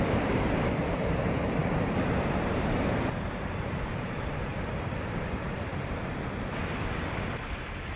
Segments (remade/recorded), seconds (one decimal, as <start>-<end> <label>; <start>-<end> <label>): 0.0-1.6 remade; 1.6-2.2 recorded; 2.2-4.5 remade; 4.5-5.3 recorded; 5.3-5.7 remade; 5.7-7.6 recorded; 7.6-8.0 remade